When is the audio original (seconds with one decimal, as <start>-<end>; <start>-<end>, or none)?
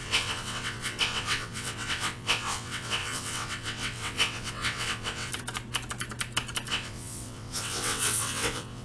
5.3-6.7